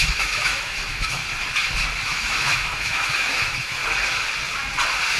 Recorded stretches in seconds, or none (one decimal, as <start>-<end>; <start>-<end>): 1.2-2.0; 3.8-5.2